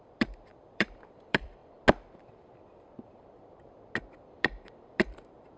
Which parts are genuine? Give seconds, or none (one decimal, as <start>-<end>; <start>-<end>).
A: 1.6-4.0